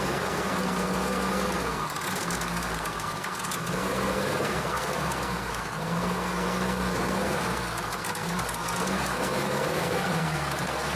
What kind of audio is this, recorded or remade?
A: remade